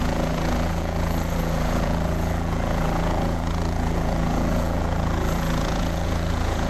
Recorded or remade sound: remade